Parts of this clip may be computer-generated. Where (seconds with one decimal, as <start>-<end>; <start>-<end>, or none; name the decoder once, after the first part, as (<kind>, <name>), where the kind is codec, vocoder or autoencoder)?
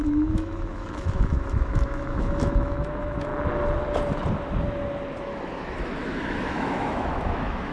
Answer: 0.0-3.3 (autoencoder, DAC-VAE); 5.2-7.7